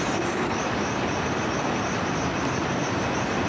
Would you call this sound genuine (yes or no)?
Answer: yes